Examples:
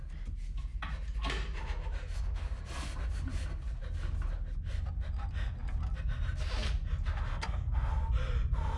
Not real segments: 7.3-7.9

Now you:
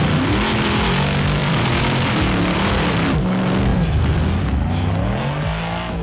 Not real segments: 1.4-3.2; 3.7-4.2

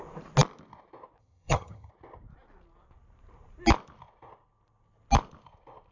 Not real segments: 1.2-1.9

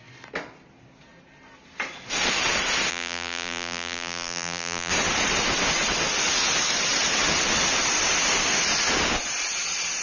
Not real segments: 2.9-4.9

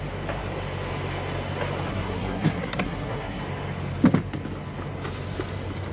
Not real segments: 1.9-3.4

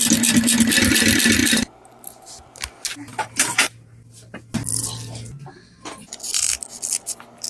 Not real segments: none

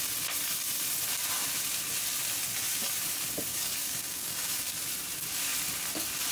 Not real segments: 3.5-4.8